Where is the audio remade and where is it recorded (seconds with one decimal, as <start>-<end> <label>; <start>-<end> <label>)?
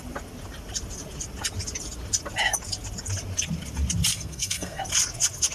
0.0-4.1 recorded; 4.1-4.8 remade; 4.8-5.5 recorded